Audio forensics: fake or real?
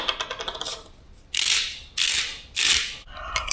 real